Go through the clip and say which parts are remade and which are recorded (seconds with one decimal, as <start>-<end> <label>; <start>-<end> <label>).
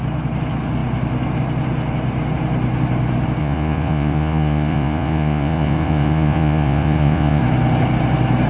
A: 0.0-3.4 recorded; 3.4-7.4 remade; 7.4-8.5 recorded